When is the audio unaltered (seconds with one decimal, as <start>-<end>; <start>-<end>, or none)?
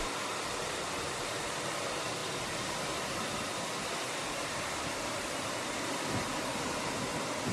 0.0-7.5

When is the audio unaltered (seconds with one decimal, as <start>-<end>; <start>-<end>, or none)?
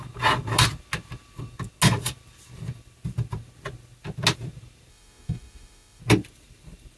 0.0-4.9; 6.0-7.0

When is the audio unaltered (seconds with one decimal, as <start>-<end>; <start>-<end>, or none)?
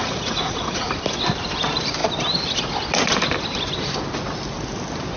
0.9-5.2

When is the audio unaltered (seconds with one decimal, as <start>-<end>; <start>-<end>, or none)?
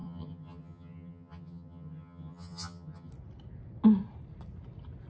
3.1-5.1